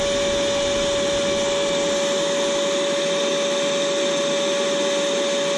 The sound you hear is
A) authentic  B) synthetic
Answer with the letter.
A